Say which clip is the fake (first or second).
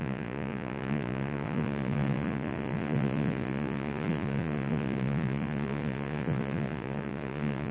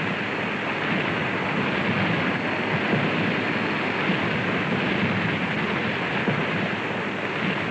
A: first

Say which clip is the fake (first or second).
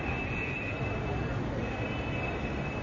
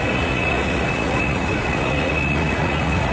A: second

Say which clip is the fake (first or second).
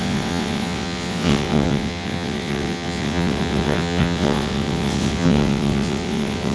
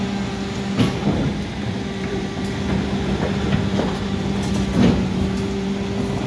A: first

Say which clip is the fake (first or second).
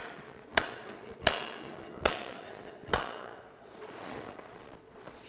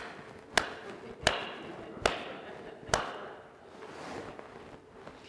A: first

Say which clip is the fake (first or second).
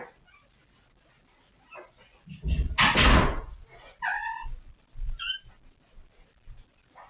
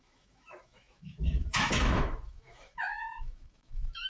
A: second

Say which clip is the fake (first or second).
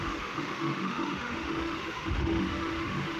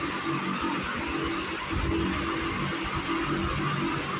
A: first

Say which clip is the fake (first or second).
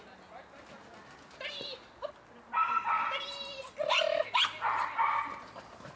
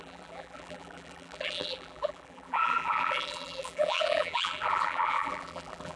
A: second